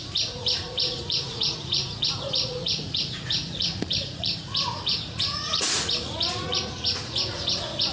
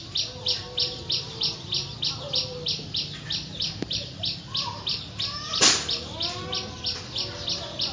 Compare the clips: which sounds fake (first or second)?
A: first